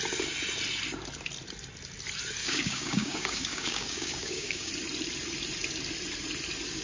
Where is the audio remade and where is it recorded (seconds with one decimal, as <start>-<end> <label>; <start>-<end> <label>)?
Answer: 0.0-2.4 recorded; 2.4-4.7 remade; 4.7-6.8 recorded